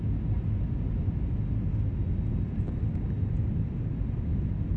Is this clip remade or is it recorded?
recorded